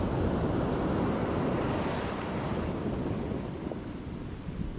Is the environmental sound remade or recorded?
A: recorded